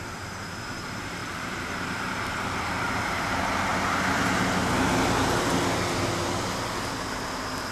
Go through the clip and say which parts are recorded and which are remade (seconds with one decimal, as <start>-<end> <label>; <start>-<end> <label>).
0.0-3.7 remade; 3.7-7.7 recorded